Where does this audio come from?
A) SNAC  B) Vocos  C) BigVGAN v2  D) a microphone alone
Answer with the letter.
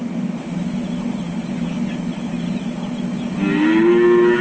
D